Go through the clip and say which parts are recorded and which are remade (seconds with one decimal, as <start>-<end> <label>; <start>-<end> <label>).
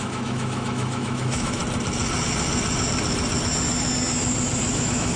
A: 0.0-1.6 remade; 1.6-4.7 recorded; 4.7-5.2 remade